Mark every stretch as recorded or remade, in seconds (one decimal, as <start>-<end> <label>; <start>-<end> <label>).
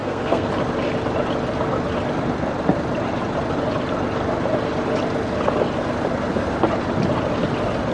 0.0-0.5 remade; 0.5-7.9 recorded